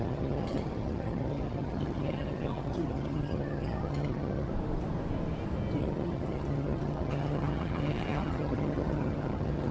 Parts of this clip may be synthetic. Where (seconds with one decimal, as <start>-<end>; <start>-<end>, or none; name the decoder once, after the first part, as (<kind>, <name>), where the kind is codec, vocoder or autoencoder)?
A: 0.0-4.5 (vocoder, HiFi-GAN); 5.8-9.7